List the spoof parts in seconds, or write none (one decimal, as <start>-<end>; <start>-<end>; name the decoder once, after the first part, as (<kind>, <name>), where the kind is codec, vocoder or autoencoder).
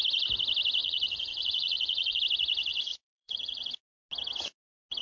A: 0.8-2.2 (vocoder, Vocos); 2.7-3.7